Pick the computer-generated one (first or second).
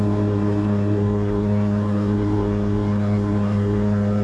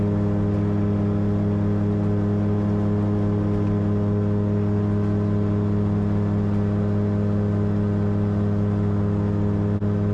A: first